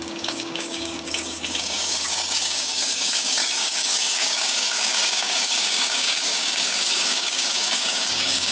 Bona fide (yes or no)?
no